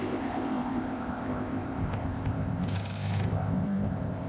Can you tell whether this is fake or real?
fake